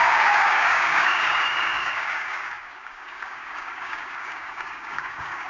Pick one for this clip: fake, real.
fake